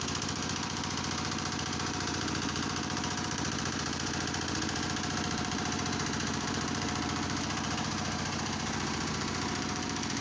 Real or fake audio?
fake